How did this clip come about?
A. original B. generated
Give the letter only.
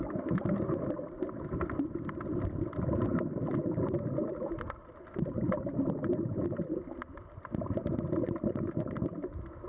B